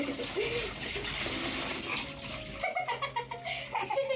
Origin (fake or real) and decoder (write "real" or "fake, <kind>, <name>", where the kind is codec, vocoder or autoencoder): real